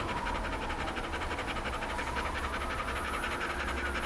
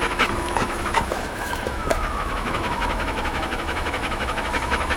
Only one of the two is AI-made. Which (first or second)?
second